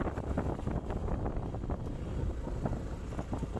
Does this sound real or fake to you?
real